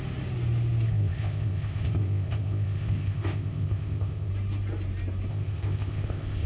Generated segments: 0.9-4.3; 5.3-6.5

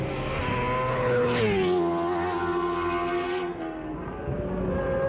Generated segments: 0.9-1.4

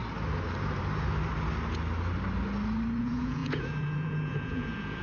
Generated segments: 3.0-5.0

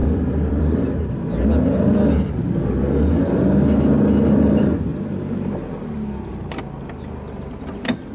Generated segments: 0.0-1.1